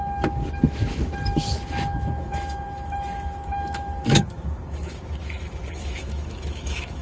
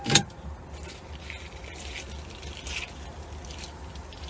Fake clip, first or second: first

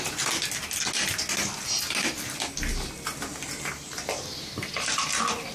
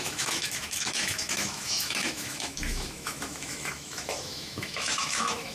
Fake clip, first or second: second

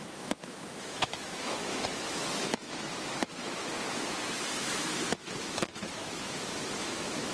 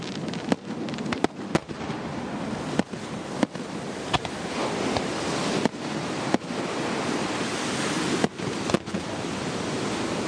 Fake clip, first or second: first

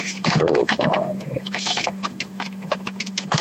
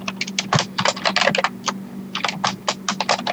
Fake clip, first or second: first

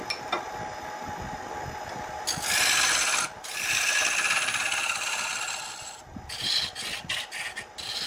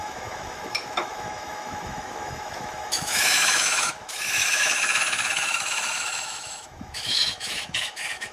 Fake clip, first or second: second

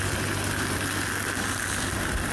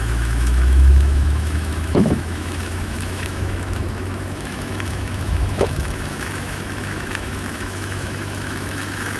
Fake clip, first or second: second